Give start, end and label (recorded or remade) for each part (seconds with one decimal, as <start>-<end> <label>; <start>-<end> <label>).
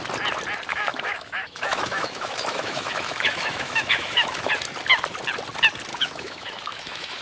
0.0-0.7 recorded; 0.7-4.5 remade; 4.5-5.9 recorded; 5.9-7.2 remade